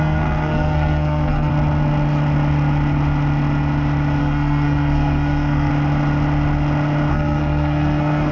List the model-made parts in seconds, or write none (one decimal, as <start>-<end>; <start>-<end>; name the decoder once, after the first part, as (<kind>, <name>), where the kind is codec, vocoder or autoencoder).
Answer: 0.0-1.5 (codec, SNAC); 4.2-5.7; 7.1-8.3